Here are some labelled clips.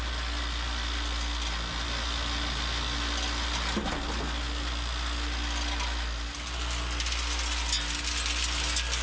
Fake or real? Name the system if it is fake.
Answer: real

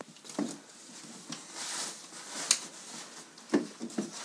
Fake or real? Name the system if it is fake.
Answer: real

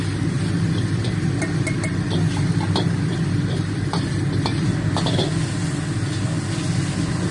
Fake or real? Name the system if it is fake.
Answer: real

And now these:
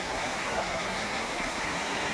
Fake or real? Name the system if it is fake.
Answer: fake, codec, SNAC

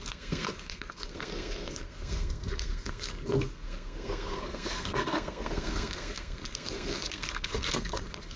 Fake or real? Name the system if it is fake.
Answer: fake, codec, SNAC